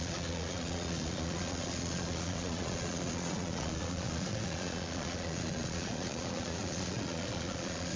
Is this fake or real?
fake